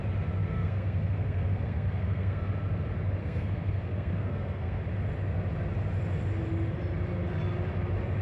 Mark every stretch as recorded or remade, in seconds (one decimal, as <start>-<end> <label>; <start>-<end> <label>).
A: 0.0-0.5 recorded; 0.5-2.5 remade; 2.5-3.2 recorded; 3.2-4.8 remade; 4.8-8.2 recorded

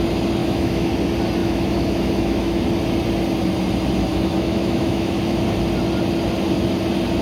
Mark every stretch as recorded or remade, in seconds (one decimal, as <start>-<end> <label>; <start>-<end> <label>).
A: 0.0-0.4 recorded; 0.4-0.9 remade; 0.9-1.4 recorded; 1.4-2.6 remade; 2.6-4.1 recorded; 4.1-5.1 remade; 5.1-7.2 recorded

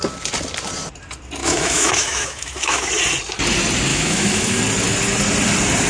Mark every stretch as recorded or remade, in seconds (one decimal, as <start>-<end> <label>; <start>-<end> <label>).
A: 0.0-1.4 recorded; 1.4-2.9 remade; 2.9-3.9 recorded; 3.9-4.6 remade; 4.6-5.9 recorded

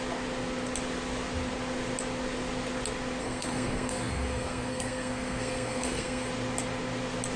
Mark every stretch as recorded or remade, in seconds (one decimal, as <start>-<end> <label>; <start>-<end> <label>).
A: 0.0-3.2 recorded; 3.2-6.3 remade; 6.3-7.4 recorded

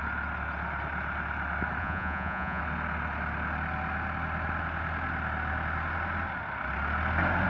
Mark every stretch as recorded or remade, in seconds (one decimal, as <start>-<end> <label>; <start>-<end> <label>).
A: 0.0-1.8 recorded; 1.8-2.6 remade; 2.6-7.5 recorded